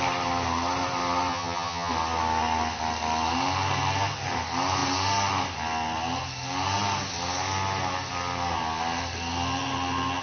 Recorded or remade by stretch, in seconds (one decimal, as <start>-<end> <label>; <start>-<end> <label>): 0.0-1.3 recorded; 1.3-1.9 remade; 1.9-10.2 recorded